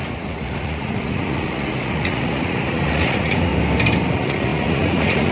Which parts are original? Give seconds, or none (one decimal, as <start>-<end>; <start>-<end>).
3.5-4.1